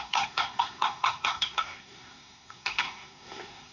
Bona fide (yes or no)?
no